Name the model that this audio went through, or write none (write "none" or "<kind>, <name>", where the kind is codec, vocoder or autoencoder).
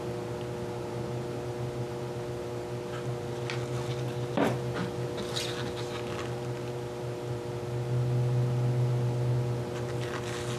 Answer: none